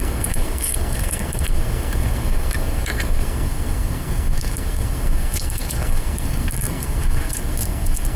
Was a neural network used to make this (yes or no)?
yes